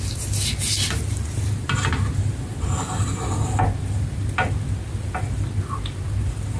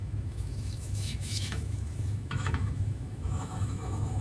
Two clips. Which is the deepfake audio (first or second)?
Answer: second